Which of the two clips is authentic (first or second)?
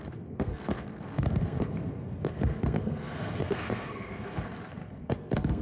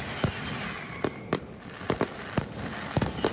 second